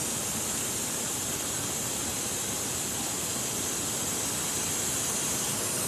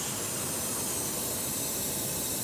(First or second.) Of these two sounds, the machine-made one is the first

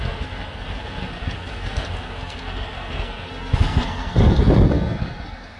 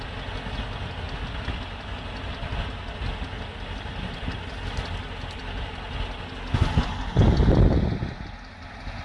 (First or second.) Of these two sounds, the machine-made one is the first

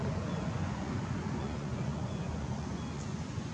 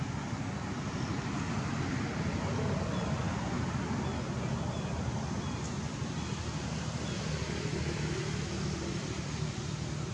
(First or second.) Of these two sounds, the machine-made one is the first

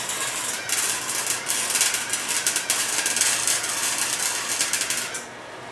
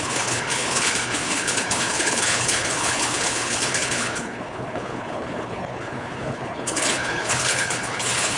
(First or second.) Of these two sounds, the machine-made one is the second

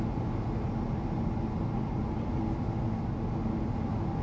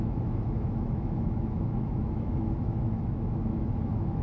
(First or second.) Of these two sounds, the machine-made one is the second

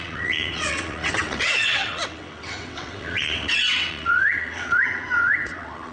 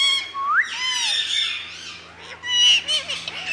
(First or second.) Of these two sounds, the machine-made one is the first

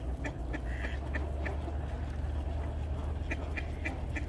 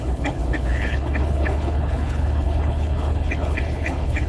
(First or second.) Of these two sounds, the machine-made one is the second